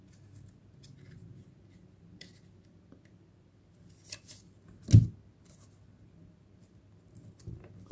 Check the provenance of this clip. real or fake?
real